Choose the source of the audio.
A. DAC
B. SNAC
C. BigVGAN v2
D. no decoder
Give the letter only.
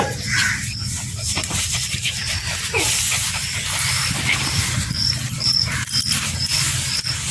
C